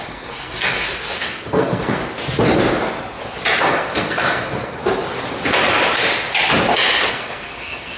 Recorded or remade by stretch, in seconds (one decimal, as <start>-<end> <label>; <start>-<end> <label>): 0.0-2.0 remade; 2.0-3.7 recorded; 3.7-4.8 remade; 4.8-7.1 recorded; 7.1-8.0 remade